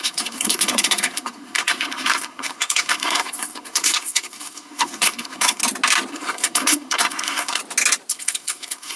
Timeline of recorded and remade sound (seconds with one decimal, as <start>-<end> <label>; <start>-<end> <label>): 0.0-5.6 remade; 5.6-6.1 recorded; 6.1-7.6 remade; 7.6-8.1 recorded; 8.1-9.0 remade